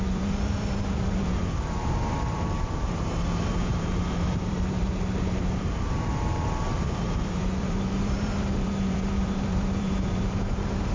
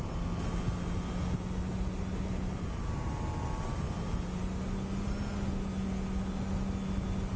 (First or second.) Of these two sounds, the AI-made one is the first